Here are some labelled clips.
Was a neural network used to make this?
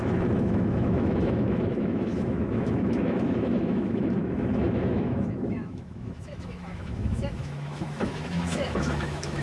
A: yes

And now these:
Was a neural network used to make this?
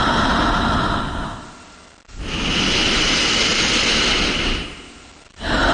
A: no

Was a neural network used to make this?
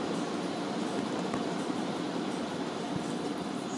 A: no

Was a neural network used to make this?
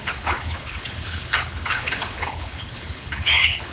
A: yes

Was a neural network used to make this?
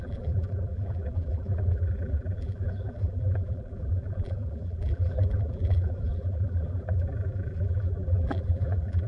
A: yes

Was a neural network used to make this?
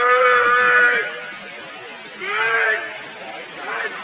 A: no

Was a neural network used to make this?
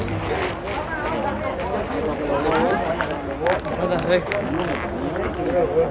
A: no